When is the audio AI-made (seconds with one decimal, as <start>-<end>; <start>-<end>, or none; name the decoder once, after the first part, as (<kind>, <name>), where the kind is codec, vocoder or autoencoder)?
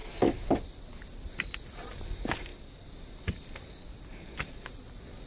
none